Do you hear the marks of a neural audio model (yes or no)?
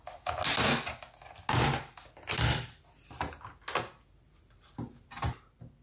no